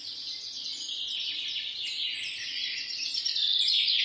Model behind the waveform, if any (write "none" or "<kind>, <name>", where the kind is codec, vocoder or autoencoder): none